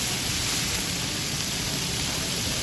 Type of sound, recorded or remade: recorded